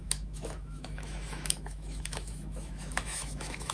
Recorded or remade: remade